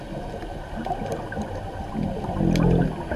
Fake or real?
real